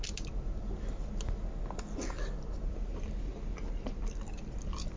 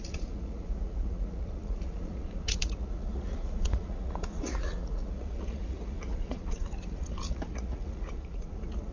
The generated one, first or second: second